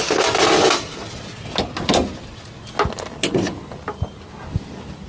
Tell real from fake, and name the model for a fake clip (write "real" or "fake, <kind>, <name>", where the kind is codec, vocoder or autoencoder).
real